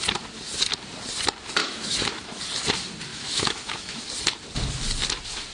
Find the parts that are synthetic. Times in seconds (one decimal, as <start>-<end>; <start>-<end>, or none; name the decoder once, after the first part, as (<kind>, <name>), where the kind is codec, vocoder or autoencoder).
1.6-2.4 (autoencoder, DAC-VAE); 3.1-4.0